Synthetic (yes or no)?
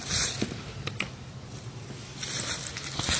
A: no